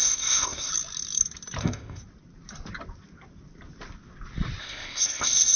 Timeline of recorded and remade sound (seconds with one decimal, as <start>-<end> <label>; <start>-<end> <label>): 0.0-0.7 remade; 0.7-1.6 recorded; 1.6-2.0 remade; 2.0-4.6 recorded; 4.6-5.6 remade